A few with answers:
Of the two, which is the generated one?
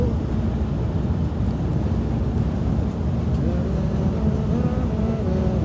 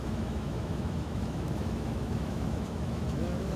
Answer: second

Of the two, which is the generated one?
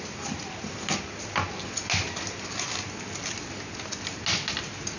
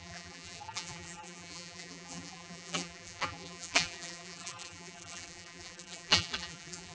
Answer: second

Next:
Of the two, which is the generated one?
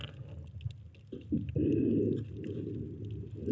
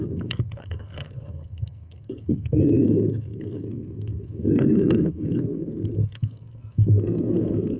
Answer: second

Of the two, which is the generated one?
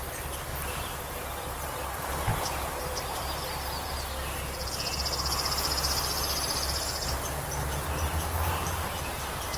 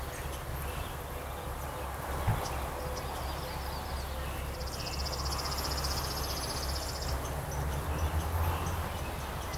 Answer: first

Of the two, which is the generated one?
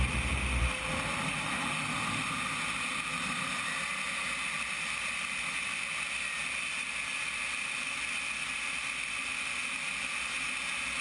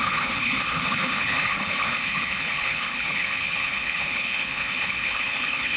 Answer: second